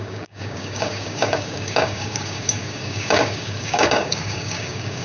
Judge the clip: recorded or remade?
remade